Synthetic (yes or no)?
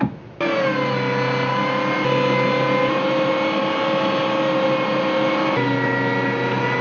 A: no